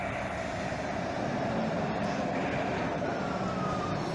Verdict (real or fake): fake